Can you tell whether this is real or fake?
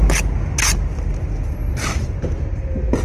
real